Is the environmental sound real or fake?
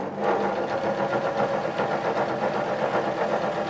real